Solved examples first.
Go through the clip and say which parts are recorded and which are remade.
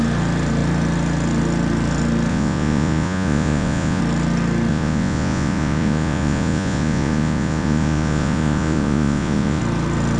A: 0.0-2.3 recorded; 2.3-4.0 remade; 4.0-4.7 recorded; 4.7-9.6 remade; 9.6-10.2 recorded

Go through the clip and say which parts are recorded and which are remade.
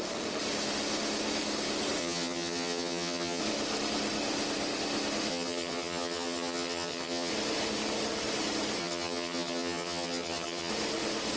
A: 0.0-2.0 recorded; 2.0-3.4 remade; 3.4-5.3 recorded; 5.3-7.3 remade; 7.3-8.8 recorded; 8.8-10.7 remade; 10.7-11.4 recorded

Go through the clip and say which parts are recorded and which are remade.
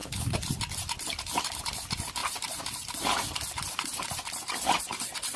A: 0.0-1.6 remade; 1.6-2.2 recorded; 2.2-4.8 remade; 4.8-5.4 recorded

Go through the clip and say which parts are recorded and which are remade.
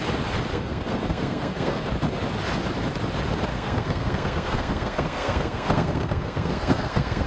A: 0.0-0.5 recorded; 0.5-1.9 remade; 1.9-3.5 recorded; 3.5-7.3 remade